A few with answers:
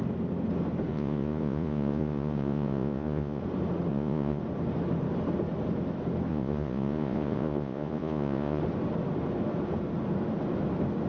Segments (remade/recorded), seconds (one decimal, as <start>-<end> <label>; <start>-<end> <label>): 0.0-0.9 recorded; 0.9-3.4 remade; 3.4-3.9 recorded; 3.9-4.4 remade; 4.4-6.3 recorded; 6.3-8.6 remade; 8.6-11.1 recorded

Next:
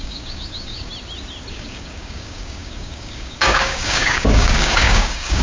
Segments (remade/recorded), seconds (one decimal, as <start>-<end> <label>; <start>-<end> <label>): 0.0-0.9 remade; 0.9-1.5 recorded; 1.5-5.4 remade

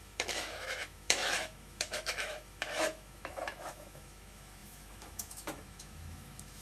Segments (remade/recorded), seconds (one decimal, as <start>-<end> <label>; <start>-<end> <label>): 0.0-6.6 remade

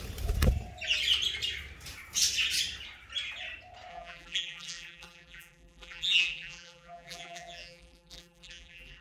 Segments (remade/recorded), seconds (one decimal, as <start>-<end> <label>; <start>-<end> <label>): 0.0-3.9 recorded; 3.9-9.0 remade